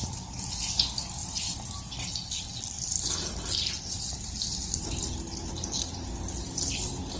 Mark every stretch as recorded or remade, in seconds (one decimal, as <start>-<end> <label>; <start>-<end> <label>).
0.0-7.2 recorded